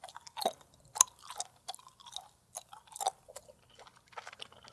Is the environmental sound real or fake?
real